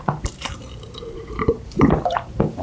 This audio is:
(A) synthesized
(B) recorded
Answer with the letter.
A